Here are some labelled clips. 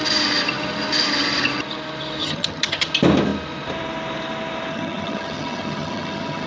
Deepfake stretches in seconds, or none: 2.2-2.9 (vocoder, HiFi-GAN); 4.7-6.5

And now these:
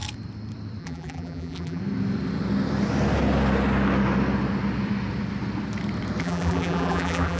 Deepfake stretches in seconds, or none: 0.8-1.8 (vocoder, BigVGAN v2); 6.2-7.4

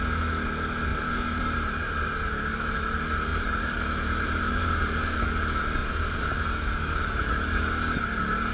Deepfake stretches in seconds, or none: 0.9-1.8 (vocoder, BigVGAN v2); 3.3-5.2; 5.8-6.5

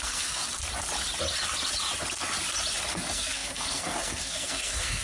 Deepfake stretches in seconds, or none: 0.0-0.4 (codec, SNAC); 2.9-5.0

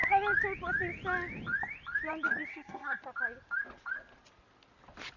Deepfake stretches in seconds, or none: 2.5-3.0 (codec, SNAC)

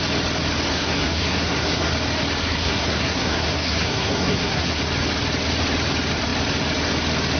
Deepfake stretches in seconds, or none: 0.7-1.9 (codec, SNAC); 2.4-4.8

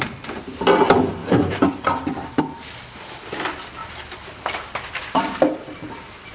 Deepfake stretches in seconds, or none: 1.2-2.4 (vocoder, BigVGAN v2); 3.8-5.2